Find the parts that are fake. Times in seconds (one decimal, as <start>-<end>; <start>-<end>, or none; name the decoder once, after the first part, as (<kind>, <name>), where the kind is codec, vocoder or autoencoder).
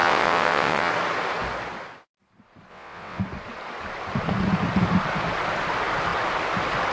0.0-0.9 (vocoder, WaveNeXt); 2.7-3.2